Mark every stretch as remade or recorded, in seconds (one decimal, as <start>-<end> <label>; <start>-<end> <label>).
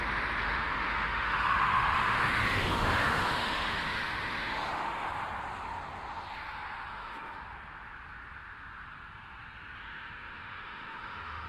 0.0-0.4 recorded; 0.4-5.1 remade; 5.1-6.9 recorded; 6.9-7.4 remade; 7.4-9.8 recorded; 9.8-11.5 remade